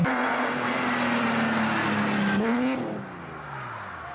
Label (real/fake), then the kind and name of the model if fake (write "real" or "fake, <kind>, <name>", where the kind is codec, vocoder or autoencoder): real